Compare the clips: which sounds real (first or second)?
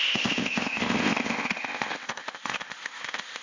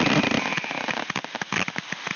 second